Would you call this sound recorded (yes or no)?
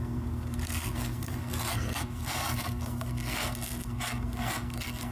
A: no